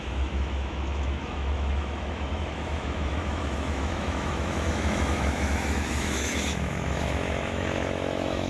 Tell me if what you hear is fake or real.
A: fake